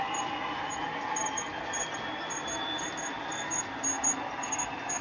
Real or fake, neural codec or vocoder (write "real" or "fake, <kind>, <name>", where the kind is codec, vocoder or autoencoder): real